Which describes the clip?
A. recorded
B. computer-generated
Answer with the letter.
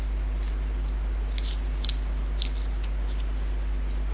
A